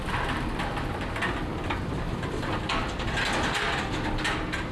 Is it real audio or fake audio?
real